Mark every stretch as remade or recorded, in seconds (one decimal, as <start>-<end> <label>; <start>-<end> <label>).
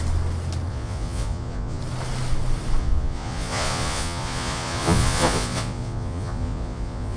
0.0-0.7 recorded; 0.7-1.8 remade; 1.8-2.8 recorded; 2.8-7.2 remade